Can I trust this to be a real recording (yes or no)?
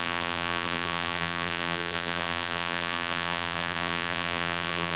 no